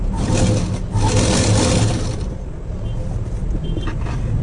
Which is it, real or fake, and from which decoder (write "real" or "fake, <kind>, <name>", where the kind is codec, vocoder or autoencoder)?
real